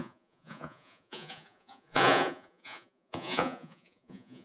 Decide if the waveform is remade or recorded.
remade